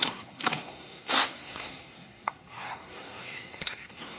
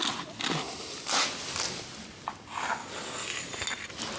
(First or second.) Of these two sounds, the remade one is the first